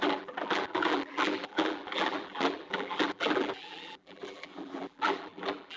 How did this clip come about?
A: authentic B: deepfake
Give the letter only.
B